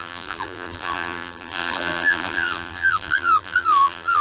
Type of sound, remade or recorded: remade